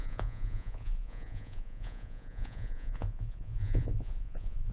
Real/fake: fake